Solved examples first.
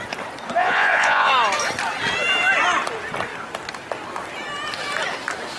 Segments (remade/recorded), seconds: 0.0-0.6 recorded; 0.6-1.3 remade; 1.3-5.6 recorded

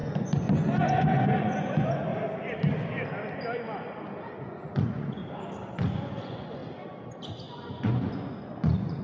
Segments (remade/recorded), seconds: 0.0-2.1 remade; 2.1-4.4 recorded; 4.4-5.2 remade; 5.2-5.9 recorded; 5.9-6.6 remade; 6.6-7.5 recorded; 7.5-9.0 remade